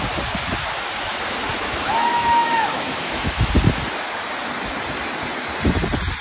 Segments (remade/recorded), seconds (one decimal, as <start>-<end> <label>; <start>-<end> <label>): 0.0-2.1 recorded; 2.1-3.5 remade; 3.5-6.2 recorded